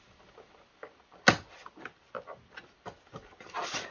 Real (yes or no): yes